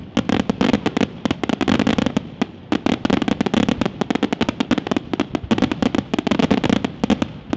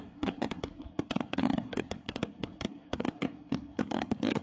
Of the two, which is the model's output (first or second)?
second